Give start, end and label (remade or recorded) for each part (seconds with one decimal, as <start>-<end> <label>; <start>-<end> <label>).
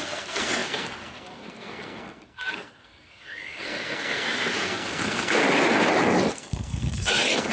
0.0-5.4 remade; 5.4-6.3 recorded; 6.3-7.5 remade